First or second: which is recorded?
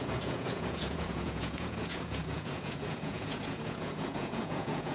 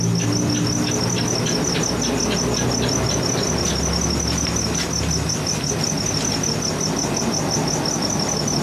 second